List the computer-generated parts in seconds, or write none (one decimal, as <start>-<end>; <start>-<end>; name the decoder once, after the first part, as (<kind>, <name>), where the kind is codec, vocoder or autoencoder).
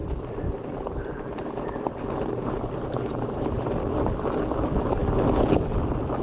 0.0-3.7 (vocoder, BigVGAN v2)